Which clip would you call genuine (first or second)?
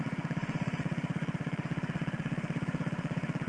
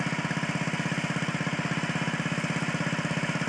second